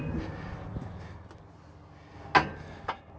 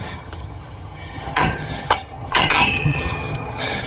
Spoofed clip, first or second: second